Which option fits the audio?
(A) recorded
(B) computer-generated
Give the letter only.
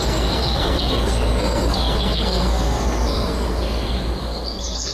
B